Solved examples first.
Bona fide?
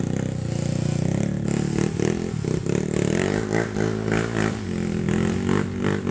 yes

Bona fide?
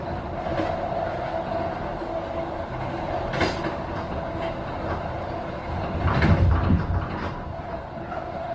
yes